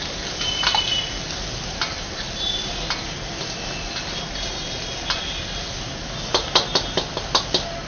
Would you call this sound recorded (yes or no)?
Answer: yes